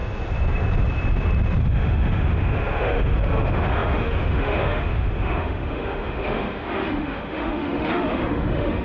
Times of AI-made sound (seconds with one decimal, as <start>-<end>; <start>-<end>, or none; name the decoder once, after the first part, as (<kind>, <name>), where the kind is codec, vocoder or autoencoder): 1.6-8.8 (autoencoder, DAC-VAE)